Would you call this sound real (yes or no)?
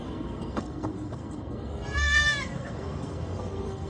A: no